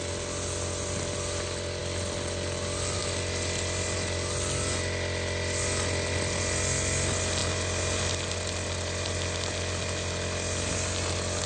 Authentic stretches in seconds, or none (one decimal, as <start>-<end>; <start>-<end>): 0.0-11.5